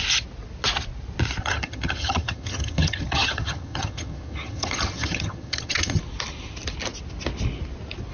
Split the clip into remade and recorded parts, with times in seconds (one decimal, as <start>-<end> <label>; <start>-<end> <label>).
0.0-1.4 recorded; 1.4-6.0 remade; 6.0-8.1 recorded